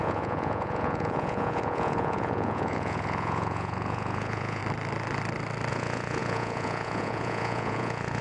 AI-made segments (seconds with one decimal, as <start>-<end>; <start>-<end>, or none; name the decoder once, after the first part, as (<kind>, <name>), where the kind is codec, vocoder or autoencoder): 0.0-4.6 (vocoder, Vocos); 5.7-8.2